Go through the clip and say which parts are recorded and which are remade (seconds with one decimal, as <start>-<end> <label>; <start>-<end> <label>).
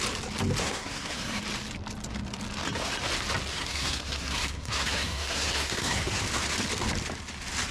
0.0-0.6 recorded; 0.6-1.4 remade; 1.4-3.5 recorded; 3.5-6.2 remade; 6.2-7.7 recorded